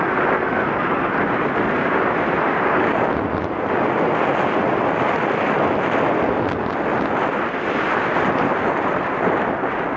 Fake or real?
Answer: real